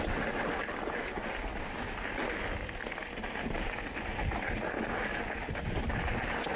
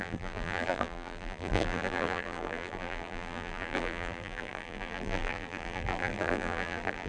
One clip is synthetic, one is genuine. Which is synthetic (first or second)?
second